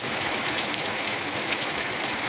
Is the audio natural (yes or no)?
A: no